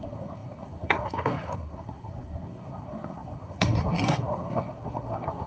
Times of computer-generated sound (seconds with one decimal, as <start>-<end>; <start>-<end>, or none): 0.0-5.5